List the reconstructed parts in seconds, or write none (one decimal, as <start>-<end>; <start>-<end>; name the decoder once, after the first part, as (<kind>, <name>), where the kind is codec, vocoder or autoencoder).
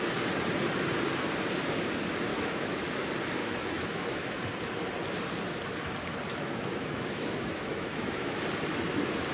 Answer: 2.3-2.9 (autoencoder, DAC-VAE); 3.4-4.4; 6.3-8.4